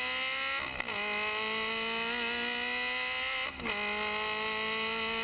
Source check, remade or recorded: recorded